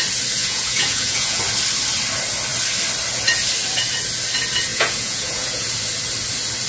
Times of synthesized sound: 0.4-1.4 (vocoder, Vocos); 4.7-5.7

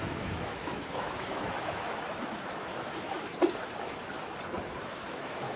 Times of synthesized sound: 0.0-3.3 (autoencoder, DAC-VAE); 4.8-5.6